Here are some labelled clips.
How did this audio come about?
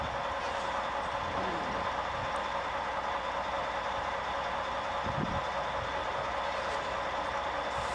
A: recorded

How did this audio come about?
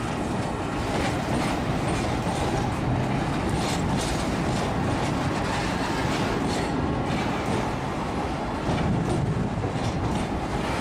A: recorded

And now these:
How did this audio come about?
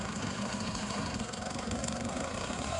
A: remade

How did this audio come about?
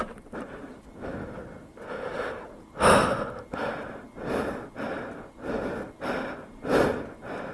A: recorded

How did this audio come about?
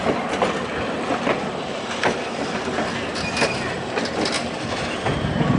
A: recorded